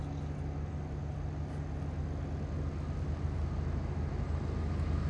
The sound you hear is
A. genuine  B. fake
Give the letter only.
A